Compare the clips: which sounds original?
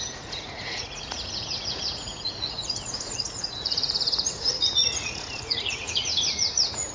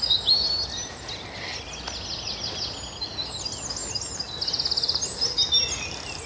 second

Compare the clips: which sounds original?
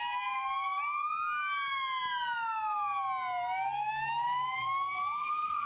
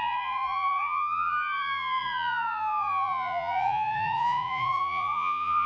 first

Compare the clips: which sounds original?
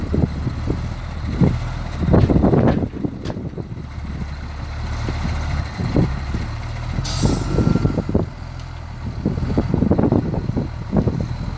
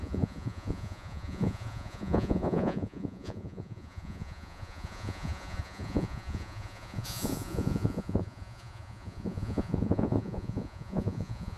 first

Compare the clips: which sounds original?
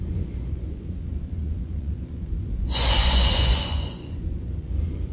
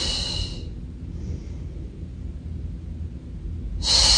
second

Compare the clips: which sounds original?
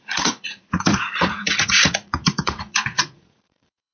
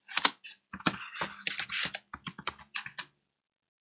second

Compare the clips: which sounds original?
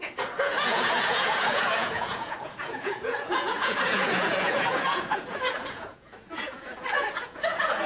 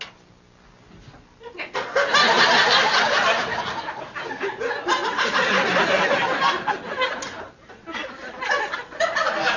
second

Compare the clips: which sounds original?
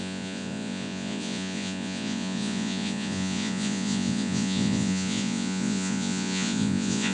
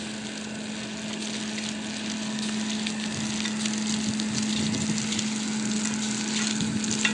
second